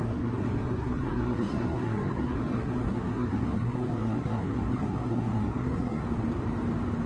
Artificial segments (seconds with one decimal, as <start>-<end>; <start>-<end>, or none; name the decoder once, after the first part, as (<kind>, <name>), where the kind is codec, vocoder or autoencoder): 0.0-6.0 (codec, SNAC)